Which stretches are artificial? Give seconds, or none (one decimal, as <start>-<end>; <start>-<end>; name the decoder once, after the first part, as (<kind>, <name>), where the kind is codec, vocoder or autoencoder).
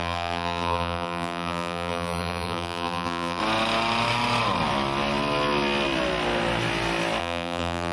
0.0-3.4 (vocoder, BigVGAN v2); 7.2-7.9